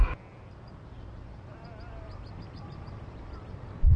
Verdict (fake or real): real